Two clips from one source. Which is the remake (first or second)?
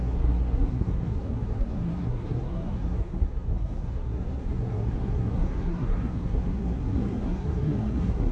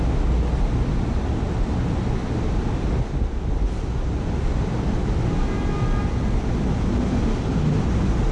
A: first